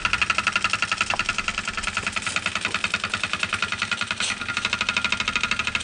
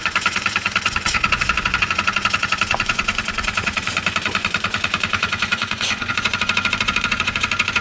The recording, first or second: first